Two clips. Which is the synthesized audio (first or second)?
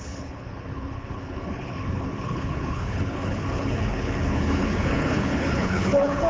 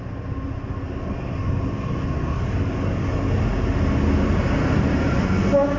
first